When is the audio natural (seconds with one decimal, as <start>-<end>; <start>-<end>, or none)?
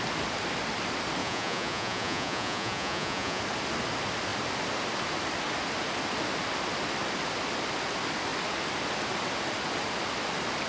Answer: 0.0-1.2; 3.4-10.7